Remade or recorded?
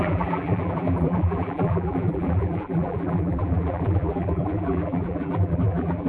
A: remade